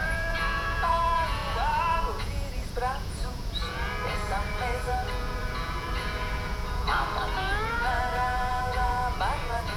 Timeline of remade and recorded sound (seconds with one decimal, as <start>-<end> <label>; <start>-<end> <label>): 0.0-9.8 remade